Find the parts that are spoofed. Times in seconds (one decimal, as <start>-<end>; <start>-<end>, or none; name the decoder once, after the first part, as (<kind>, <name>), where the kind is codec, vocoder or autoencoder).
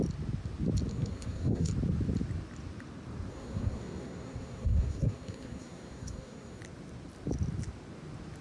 0.9-1.7 (codec, SNAC); 3.3-6.6